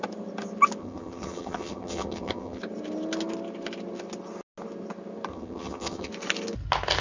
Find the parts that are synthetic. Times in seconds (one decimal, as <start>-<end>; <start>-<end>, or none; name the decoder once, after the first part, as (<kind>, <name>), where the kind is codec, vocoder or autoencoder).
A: 0.8-2.6 (vocoder, HiFi-GAN); 5.3-6.1